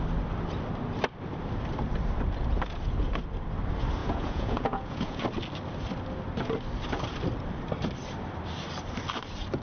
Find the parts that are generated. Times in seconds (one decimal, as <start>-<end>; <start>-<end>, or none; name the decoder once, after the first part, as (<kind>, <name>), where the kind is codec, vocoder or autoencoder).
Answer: 4.0-5.2 (vocoder, Vocos)